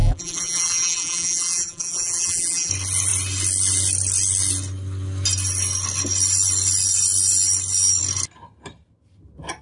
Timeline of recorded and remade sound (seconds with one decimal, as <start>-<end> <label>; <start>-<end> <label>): 0.0-2.7 remade; 2.7-9.6 recorded